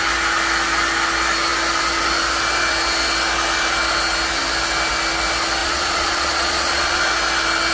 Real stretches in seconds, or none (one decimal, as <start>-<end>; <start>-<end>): 0.0-5.6; 7.0-7.7